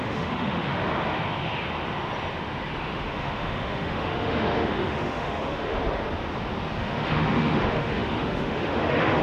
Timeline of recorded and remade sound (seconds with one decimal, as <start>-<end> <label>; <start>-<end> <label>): 0.0-0.7 remade; 0.7-2.8 recorded; 2.8-5.8 remade; 5.8-6.8 recorded; 6.8-9.2 remade